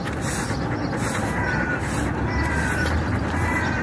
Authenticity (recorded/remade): recorded